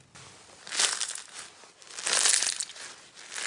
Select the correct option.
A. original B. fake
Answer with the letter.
A